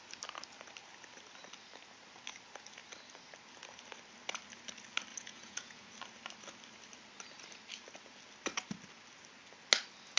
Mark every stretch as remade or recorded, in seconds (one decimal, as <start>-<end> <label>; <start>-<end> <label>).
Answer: 0.0-5.1 recorded; 5.1-5.9 remade; 5.9-10.2 recorded